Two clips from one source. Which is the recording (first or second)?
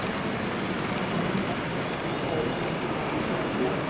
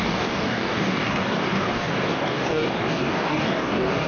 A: first